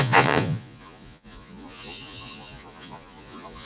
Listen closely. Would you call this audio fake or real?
fake